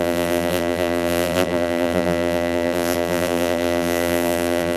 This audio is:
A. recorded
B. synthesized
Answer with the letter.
B